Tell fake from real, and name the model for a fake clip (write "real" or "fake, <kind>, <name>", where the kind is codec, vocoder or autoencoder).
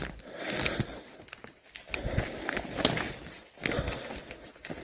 real